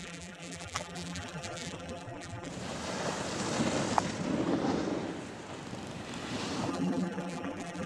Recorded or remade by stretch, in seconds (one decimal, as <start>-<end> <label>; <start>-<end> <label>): 0.0-2.5 remade; 2.5-6.7 recorded; 6.7-7.9 remade